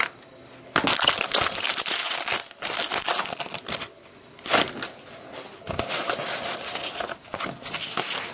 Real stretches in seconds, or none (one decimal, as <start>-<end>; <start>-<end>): 0.0-8.3